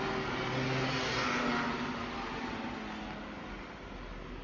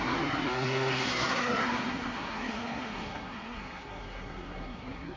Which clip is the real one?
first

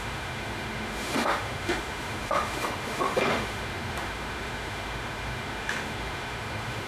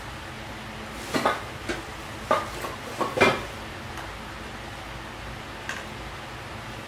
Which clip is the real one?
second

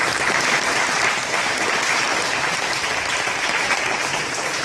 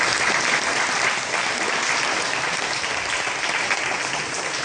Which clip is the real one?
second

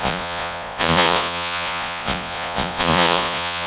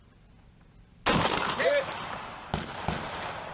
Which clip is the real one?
second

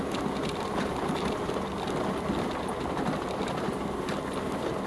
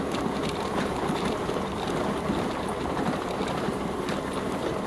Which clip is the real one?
first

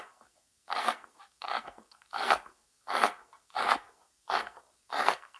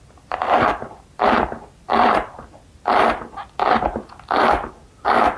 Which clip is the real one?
second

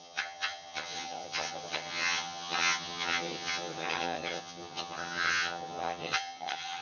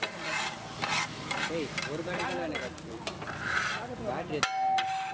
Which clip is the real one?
second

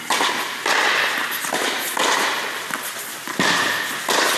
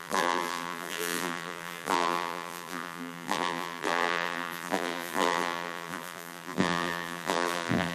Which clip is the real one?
first